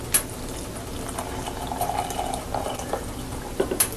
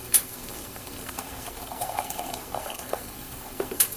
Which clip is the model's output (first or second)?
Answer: second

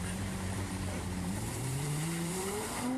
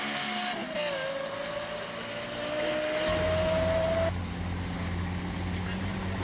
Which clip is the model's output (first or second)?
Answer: first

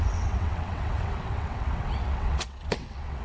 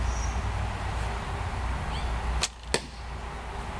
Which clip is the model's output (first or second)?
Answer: first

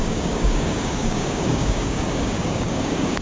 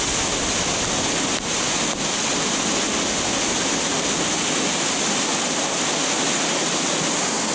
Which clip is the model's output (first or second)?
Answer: first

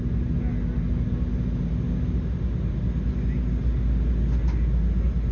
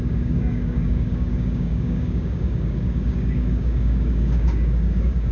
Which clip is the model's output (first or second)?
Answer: second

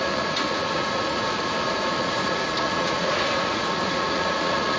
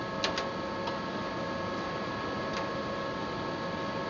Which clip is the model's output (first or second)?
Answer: first